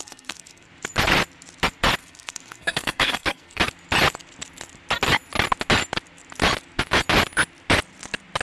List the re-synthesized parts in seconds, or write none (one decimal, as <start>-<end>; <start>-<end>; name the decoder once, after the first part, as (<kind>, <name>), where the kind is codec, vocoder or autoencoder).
0.0-0.7 (codec, SNAC); 2.0-3.6